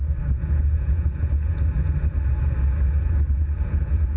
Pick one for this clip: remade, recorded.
remade